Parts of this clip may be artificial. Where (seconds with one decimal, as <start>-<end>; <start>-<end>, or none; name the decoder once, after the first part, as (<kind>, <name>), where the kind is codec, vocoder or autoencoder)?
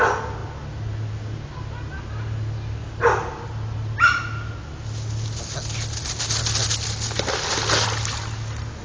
none